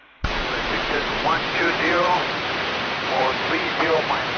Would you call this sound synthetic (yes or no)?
yes